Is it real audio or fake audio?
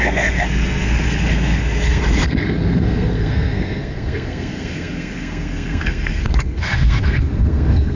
fake